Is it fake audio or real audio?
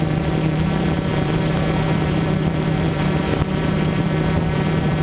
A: fake